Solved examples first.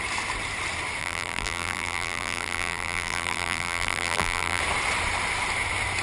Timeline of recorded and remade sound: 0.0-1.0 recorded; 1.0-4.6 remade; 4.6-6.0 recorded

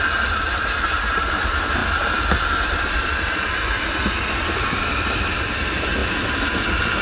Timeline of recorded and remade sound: 0.0-7.0 recorded

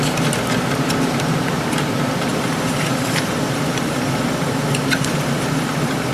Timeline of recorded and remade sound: 0.0-2.3 recorded; 2.3-6.1 remade